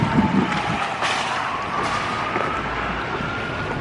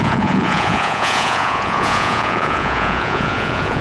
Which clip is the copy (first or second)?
second